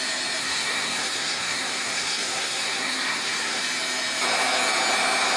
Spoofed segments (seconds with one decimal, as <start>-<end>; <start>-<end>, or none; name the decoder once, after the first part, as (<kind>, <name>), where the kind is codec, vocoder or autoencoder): 0.4-3.6 (codec, SNAC)